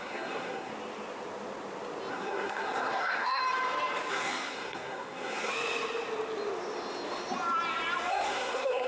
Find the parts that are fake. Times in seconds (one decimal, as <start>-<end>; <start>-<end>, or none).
0.0-0.7; 2.1-3.4; 4.1-5.5; 8.1-8.9